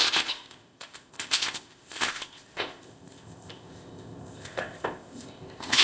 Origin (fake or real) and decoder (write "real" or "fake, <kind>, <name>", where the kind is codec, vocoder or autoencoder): fake, codec, ZipCodec